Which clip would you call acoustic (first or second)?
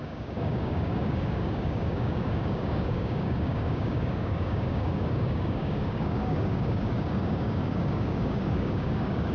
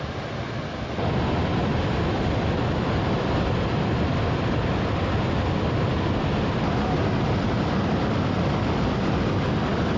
second